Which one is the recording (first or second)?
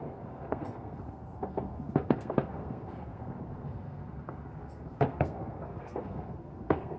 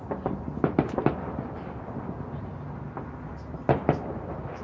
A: second